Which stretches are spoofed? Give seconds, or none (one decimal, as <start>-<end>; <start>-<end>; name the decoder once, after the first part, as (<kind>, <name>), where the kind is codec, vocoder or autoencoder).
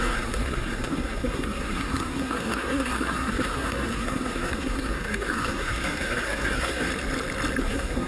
0.0-6.9 (codec, SNAC); 7.6-8.1